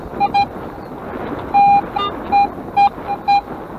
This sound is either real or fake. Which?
real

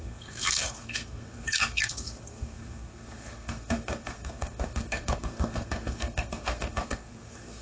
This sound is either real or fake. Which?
fake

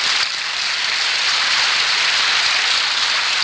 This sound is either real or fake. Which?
real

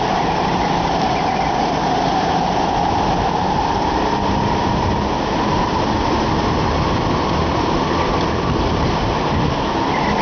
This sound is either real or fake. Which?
real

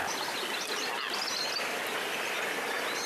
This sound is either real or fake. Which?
real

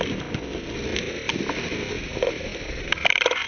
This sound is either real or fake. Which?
real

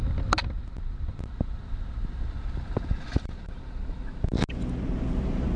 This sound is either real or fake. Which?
real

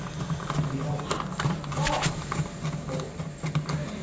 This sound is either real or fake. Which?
real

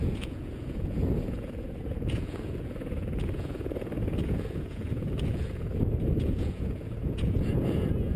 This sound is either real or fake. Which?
fake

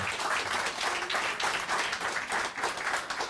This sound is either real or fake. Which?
real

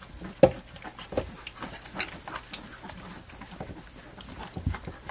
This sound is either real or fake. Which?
real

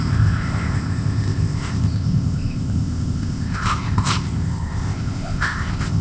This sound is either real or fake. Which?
fake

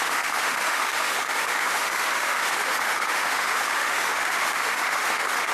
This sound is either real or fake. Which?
fake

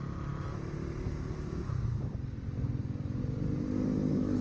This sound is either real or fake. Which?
real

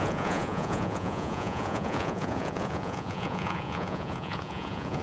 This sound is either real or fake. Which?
fake